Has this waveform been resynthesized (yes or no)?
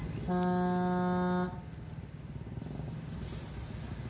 no